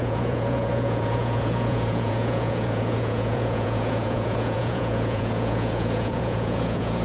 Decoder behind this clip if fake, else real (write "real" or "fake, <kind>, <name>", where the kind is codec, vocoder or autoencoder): fake, vocoder, Vocos